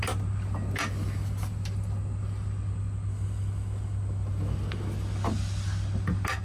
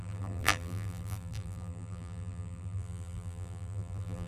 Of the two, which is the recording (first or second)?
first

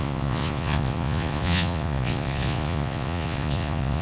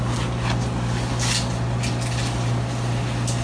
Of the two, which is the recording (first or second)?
second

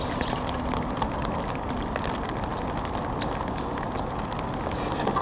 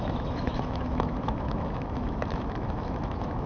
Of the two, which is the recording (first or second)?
first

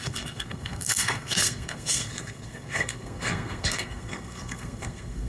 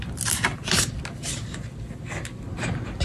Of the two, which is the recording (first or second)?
second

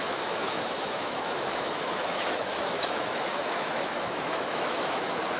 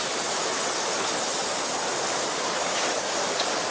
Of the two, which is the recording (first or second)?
second